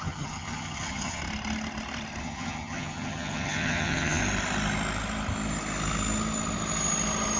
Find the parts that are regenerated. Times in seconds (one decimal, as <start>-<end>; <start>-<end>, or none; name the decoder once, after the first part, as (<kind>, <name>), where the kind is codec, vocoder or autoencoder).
0.0-1.2 (vocoder, HiFi-GAN); 2.2-4.2